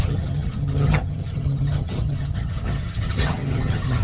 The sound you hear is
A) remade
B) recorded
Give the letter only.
A